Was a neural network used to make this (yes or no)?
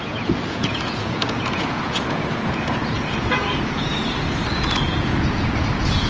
yes